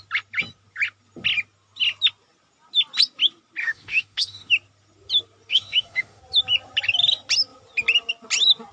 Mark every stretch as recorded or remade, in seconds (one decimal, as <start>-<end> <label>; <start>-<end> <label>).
0.0-3.6 recorded; 3.6-4.5 remade; 4.5-5.5 recorded; 5.5-6.2 remade; 6.2-8.7 recorded